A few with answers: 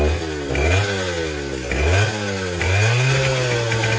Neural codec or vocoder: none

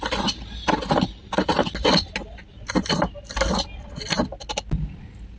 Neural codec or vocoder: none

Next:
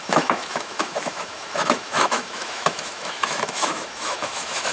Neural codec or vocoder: autoencoder, DAC-VAE